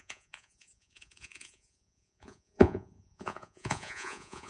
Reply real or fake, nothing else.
fake